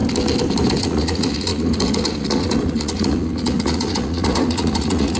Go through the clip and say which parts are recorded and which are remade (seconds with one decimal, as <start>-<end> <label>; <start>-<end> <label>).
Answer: 0.0-0.7 recorded; 0.7-5.2 remade